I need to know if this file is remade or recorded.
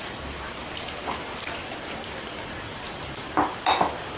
recorded